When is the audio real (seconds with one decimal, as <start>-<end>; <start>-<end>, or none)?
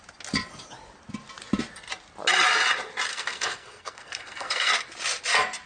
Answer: 0.0-3.1; 4.7-5.7